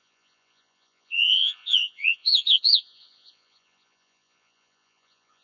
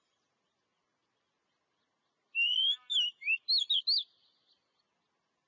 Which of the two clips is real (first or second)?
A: second